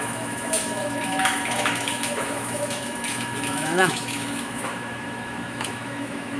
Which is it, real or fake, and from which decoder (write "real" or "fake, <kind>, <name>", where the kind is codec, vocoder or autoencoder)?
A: fake, autoencoder, DAC-VAE